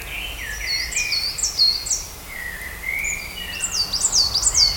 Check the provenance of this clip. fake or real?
real